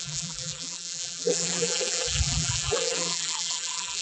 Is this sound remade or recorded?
remade